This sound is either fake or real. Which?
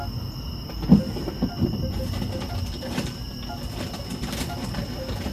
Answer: real